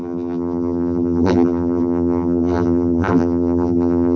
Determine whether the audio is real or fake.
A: fake